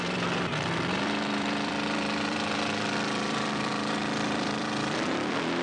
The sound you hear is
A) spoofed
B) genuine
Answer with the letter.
A